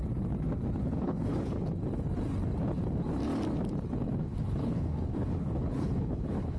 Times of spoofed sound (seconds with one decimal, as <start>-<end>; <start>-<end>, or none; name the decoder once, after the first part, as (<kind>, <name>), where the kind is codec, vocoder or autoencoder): 0.8-1.7 (codec, HILCodec); 4.2-6.6